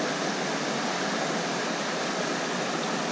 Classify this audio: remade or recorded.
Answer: recorded